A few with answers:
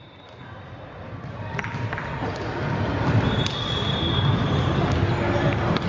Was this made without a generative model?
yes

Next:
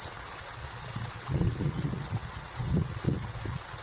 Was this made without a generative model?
no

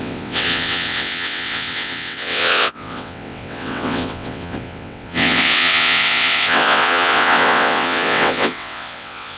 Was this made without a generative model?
no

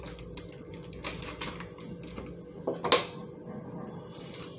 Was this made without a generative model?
yes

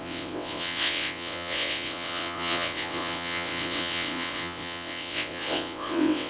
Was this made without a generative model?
no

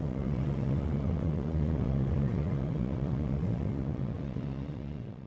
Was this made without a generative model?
no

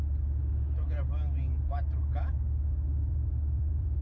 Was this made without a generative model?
yes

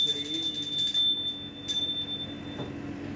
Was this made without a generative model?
yes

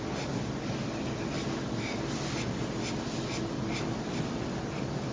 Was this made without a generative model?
yes